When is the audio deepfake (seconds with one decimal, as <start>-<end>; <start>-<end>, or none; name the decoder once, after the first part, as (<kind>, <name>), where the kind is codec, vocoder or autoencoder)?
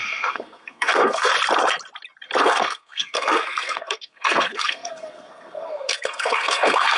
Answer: 0.0-1.3 (codec, SNAC); 2.4-7.0